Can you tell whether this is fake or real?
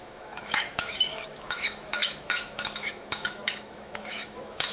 fake